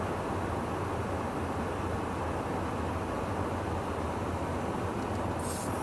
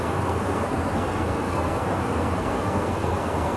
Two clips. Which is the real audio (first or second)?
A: first